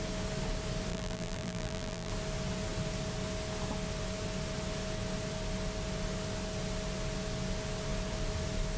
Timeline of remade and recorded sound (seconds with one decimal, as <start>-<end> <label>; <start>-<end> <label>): 0.0-0.9 recorded; 0.9-2.1 remade; 2.1-8.8 recorded